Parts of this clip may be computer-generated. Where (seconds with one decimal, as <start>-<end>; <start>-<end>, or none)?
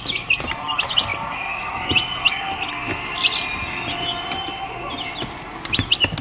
none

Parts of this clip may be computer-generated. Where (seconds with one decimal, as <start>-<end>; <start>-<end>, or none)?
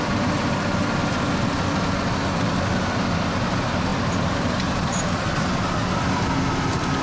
3.9-5.5